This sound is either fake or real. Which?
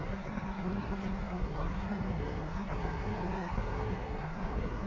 fake